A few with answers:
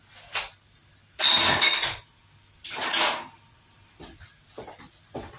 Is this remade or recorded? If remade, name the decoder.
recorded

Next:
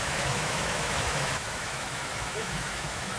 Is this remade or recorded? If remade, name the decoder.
remade, autoencoder, DAC-VAE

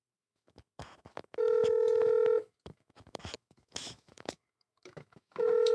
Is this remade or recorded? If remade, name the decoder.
remade, autoencoder, DAC-VAE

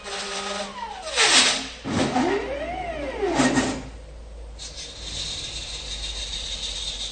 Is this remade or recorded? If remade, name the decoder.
recorded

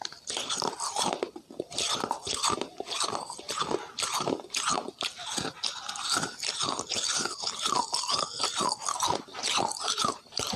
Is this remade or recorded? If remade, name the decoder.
recorded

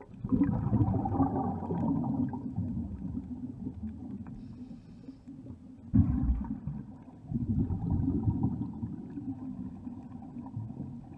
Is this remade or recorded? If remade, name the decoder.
recorded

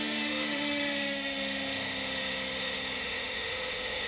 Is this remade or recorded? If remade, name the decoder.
remade, autoencoder, DAC-VAE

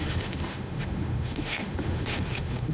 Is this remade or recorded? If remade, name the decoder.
remade, autoencoder, DAC-VAE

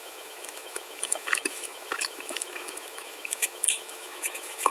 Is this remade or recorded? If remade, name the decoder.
remade, autoencoder, DAC-VAE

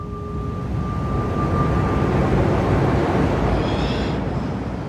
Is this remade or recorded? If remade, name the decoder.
recorded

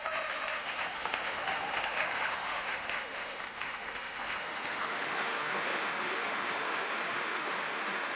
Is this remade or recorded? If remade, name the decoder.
remade, autoencoder, DAC-VAE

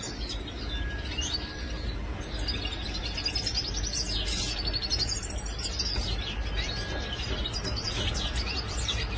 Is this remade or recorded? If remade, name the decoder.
recorded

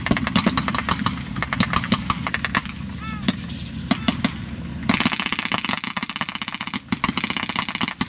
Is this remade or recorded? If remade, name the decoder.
recorded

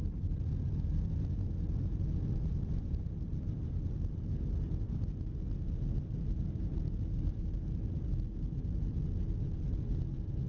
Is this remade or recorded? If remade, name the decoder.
recorded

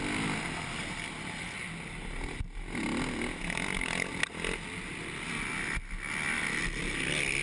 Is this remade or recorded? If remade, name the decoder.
recorded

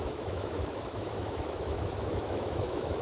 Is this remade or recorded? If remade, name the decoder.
remade, autoencoder, DAC-VAE